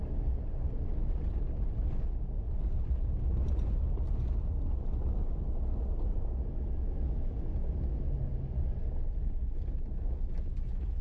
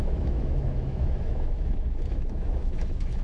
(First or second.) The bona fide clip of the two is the first